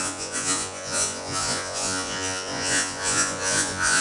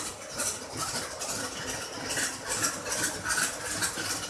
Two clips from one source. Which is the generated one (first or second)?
first